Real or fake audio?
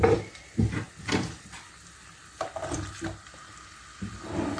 real